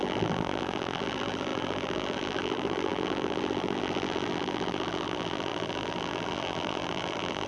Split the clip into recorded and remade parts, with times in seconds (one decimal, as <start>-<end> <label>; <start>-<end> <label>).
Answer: 0.0-7.5 remade